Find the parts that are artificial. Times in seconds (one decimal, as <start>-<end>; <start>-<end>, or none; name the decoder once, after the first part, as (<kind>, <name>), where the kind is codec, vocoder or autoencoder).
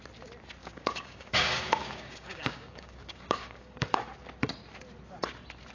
0.6-4.0 (codec, DAC)